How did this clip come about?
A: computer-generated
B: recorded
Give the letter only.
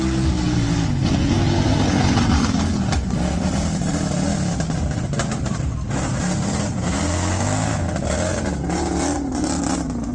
B